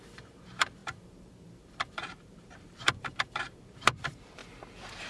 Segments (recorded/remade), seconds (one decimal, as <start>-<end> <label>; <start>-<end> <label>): 0.0-4.4 remade; 4.4-5.1 recorded